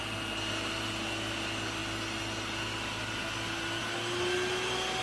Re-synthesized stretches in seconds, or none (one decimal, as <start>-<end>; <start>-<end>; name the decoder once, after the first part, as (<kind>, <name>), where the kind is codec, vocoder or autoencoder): none